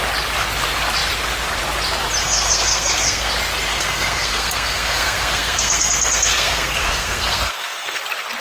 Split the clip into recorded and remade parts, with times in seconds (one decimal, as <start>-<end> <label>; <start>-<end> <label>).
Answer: 0.0-2.2 recorded; 2.2-3.3 remade; 3.3-3.7 recorded; 3.7-8.0 remade; 8.0-8.4 recorded